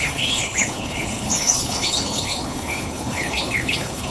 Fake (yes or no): yes